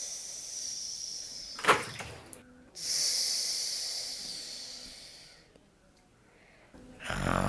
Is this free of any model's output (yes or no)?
no